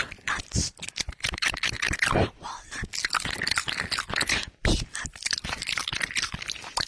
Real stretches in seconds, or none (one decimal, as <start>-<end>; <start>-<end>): 2.9-3.6